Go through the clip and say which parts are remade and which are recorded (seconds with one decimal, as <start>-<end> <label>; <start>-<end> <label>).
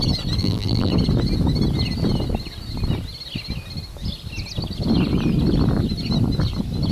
0.0-0.4 recorded; 0.4-0.9 remade; 0.9-6.9 recorded